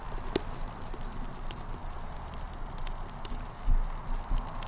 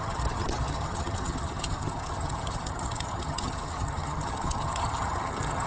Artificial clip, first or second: second